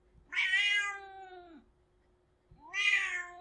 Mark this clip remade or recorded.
recorded